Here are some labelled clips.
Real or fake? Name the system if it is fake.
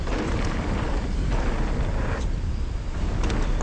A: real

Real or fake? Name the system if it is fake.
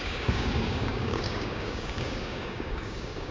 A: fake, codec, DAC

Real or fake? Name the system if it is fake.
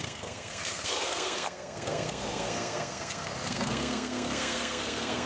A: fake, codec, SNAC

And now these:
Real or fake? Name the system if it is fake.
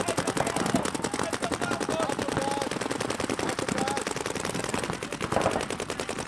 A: real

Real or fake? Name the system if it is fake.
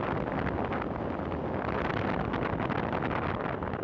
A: real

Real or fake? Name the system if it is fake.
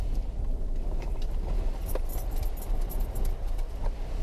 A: fake, vocoder, BigVGAN v2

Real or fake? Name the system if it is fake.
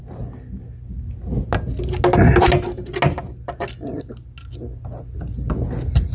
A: real